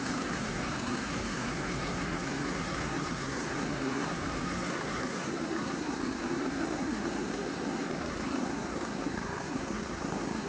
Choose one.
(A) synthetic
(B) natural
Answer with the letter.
A